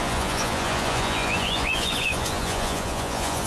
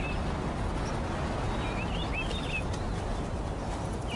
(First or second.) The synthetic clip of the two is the first